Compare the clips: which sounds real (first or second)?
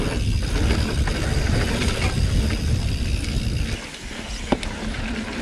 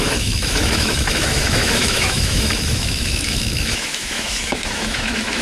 first